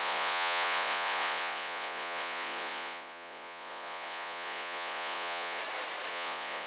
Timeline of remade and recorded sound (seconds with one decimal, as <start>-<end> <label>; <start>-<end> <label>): 0.0-5.6 remade; 5.6-6.1 recorded; 6.1-6.7 remade